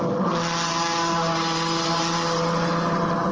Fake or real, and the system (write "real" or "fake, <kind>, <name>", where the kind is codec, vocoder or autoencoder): real